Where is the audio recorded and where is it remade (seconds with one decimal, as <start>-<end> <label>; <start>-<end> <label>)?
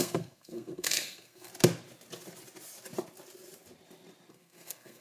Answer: 0.0-1.5 remade; 1.5-4.3 recorded; 4.3-5.0 remade